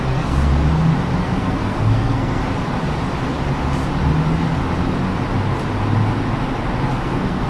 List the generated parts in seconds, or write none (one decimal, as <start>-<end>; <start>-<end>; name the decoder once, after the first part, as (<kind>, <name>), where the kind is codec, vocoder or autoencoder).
0.0-0.5 (codec, SNAC); 1.2-2.4; 6.8-7.5